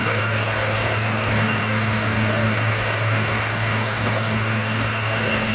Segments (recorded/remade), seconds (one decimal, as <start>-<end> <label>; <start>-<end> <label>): 0.0-5.5 remade